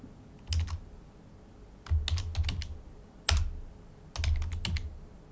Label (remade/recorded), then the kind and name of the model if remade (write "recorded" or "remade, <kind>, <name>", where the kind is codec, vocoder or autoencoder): recorded